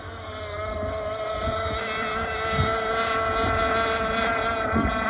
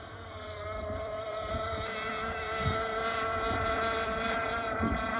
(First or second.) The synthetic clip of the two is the second